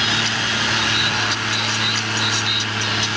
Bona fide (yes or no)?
yes